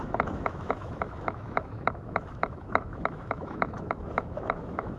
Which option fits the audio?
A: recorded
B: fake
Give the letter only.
B